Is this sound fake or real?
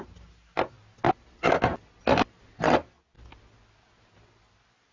real